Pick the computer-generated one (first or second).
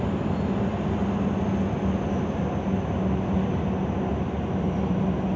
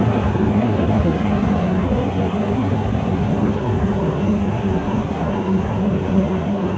second